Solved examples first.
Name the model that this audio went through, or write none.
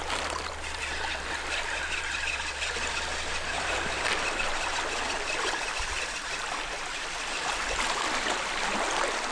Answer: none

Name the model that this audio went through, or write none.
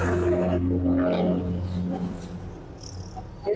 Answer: none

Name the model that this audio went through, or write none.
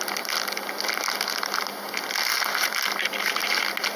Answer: none